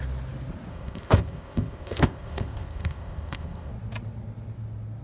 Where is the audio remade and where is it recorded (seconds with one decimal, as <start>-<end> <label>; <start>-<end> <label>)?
0.0-0.7 recorded; 0.7-3.7 remade; 3.7-5.0 recorded